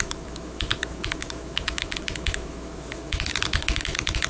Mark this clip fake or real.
fake